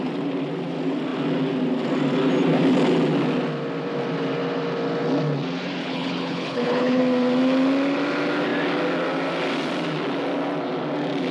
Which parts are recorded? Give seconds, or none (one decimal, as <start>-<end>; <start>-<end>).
0.0-5.8; 7.0-11.3